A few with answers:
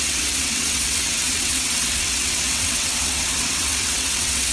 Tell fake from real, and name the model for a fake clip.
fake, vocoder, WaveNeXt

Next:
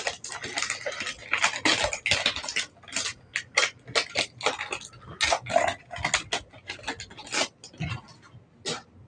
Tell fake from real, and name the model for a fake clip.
real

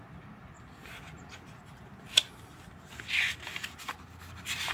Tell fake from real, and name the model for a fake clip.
real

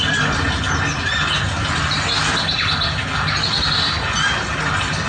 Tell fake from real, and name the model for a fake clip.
real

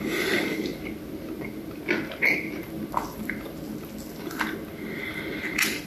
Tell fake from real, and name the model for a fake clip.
real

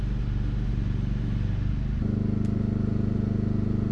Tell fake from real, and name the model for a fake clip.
real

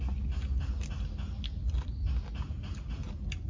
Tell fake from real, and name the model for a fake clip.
real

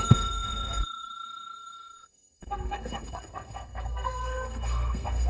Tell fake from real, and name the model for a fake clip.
fake, codec, SNAC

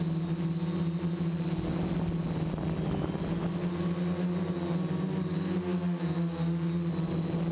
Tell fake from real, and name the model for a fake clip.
real